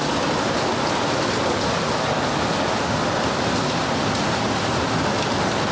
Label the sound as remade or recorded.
recorded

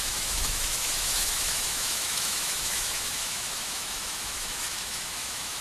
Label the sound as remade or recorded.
remade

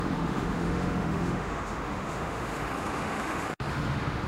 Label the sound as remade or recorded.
remade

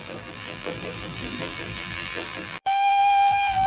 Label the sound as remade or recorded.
remade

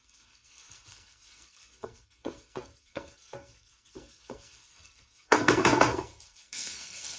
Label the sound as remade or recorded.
remade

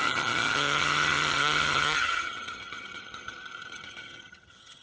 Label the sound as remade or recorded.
remade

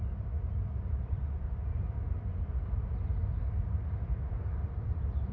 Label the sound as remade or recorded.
recorded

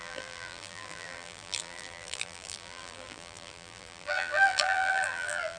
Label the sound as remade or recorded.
remade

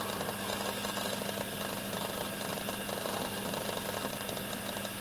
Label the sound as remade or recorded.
recorded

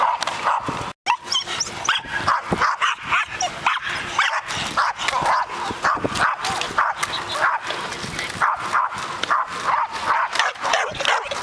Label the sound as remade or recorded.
recorded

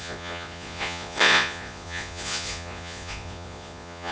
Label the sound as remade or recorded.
remade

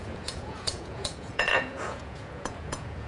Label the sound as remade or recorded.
remade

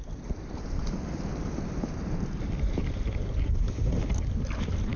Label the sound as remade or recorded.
recorded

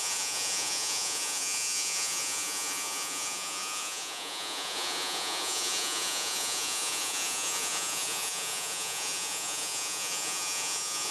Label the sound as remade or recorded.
remade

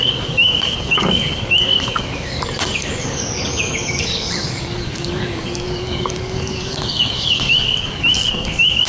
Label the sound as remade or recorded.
remade